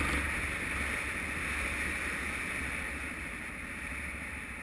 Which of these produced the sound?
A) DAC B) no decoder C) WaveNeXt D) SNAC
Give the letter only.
B